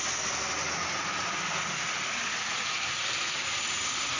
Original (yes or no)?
yes